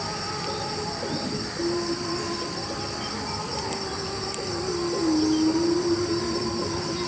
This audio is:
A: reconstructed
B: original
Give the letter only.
B